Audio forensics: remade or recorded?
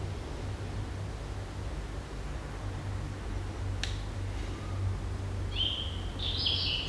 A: recorded